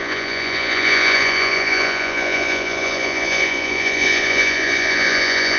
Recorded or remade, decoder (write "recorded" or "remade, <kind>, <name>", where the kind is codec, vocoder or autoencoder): remade, vocoder, Vocos